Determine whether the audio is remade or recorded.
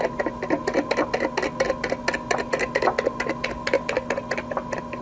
recorded